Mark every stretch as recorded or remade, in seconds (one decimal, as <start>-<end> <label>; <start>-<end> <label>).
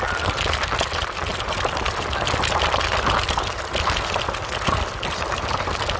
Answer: 0.0-6.0 recorded